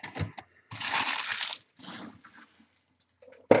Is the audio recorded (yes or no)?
yes